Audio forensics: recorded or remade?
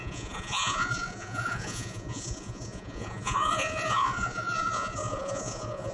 remade